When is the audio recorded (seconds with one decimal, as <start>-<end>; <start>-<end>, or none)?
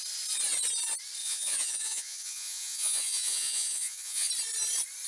0.0-1.2; 4.3-5.1